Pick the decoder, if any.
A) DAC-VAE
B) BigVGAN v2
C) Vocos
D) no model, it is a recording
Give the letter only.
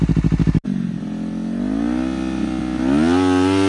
D